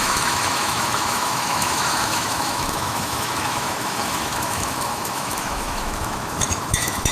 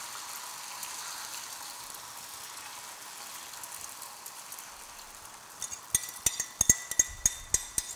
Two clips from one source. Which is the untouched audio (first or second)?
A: second